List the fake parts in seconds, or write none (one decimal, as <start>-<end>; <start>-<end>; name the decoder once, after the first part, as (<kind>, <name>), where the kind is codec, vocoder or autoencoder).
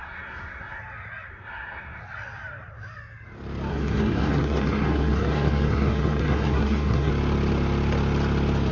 0.0-0.8 (codec, SNAC); 1.3-2.0; 3.7-7.1